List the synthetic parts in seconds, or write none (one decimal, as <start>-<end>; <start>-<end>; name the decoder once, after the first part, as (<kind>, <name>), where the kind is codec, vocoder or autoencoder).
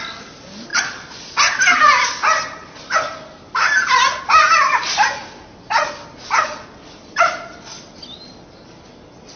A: none